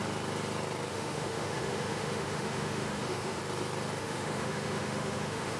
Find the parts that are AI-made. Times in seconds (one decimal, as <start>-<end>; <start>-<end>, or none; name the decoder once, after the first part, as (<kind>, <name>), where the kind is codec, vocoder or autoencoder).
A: 0.9-3.4 (autoencoder, DAC-VAE); 4.0-5.6